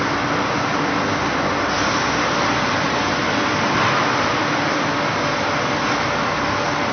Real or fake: real